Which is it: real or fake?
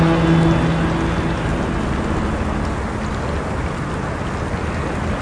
real